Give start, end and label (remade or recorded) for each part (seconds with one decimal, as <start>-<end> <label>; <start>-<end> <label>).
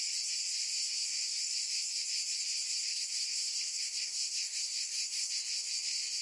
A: 0.0-0.8 recorded; 0.8-1.5 remade; 1.5-2.9 recorded; 2.9-5.3 remade; 5.3-6.2 recorded